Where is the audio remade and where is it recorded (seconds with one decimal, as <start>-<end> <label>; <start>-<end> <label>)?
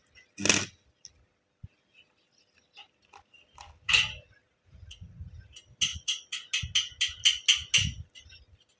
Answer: 0.0-4.4 recorded; 4.4-5.3 remade; 5.3-5.9 recorded; 5.9-6.5 remade; 6.5-8.8 recorded